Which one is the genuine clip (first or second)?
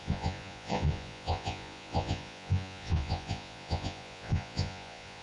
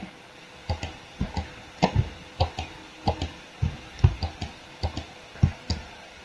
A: second